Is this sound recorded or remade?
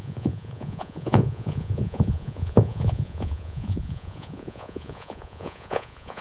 remade